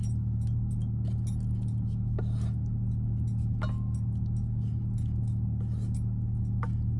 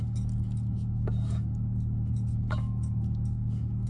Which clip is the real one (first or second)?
first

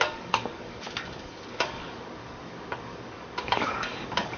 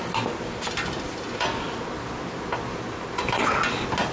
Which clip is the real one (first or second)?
second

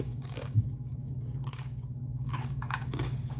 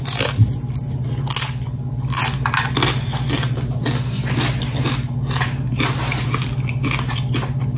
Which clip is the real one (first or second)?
second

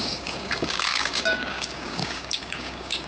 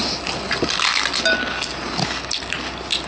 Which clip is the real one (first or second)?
second